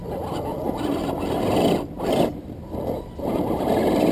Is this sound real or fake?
real